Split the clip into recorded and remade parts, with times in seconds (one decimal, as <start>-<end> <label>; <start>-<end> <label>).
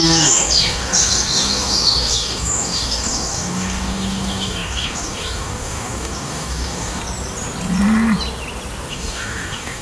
0.0-7.0 remade; 7.0-8.9 recorded; 8.9-9.8 remade